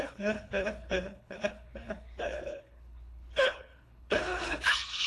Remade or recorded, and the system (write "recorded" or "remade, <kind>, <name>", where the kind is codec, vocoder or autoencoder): remade, codec, HILCodec